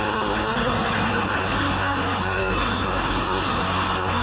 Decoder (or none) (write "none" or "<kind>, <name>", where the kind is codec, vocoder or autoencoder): codec, SNAC